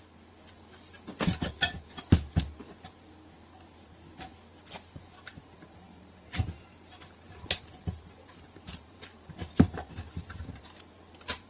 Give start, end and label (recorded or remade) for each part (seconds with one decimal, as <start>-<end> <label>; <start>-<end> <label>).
0.0-4.5 recorded; 4.5-9.7 remade; 9.7-11.5 recorded